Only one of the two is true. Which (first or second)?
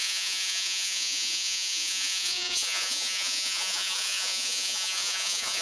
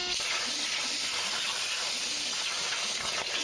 second